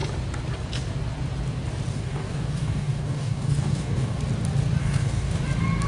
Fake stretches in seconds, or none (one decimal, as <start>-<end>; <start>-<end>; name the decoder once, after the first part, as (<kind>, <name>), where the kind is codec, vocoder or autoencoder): 1.9-4.2 (codec, DAC); 4.8-5.4

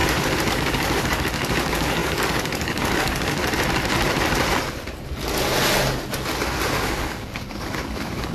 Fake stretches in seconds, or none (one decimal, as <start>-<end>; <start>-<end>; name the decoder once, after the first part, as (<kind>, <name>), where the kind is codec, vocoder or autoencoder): 0.5-3.4 (codec, DAC); 6.7-8.3

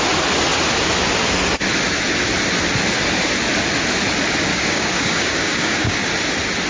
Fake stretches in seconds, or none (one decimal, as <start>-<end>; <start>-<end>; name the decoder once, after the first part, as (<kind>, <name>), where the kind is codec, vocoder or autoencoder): 4.5-6.1 (codec, DAC)

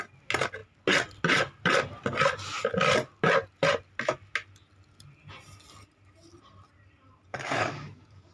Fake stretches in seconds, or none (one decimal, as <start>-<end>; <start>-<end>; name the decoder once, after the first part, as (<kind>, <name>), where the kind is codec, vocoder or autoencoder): 7.3-8.3 (codec, DAC)

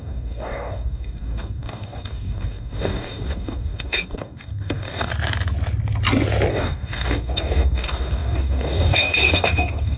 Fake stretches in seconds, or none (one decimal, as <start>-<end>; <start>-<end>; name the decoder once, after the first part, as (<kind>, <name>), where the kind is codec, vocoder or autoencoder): 0.0-5.1 (codec, DAC); 6.5-10.0

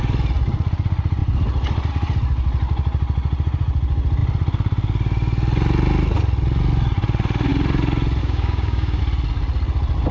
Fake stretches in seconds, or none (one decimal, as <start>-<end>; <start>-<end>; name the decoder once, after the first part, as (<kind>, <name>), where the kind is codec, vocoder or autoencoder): 8.2-9.0 (codec, DAC)

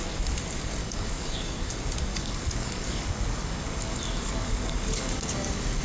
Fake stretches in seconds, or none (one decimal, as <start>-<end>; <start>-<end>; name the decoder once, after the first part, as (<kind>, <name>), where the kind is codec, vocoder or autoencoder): 0.8-1.7 (codec, DAC); 2.1-5.8